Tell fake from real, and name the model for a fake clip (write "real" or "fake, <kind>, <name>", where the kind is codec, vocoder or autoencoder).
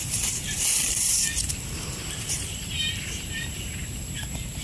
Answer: fake, vocoder, BigVGAN v2